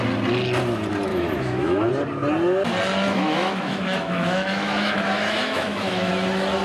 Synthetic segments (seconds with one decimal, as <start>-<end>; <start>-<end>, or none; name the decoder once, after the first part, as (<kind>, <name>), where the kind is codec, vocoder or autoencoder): 1.1-1.9 (autoencoder, DAC-VAE); 3.1-6.1